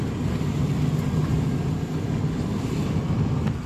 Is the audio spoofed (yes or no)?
no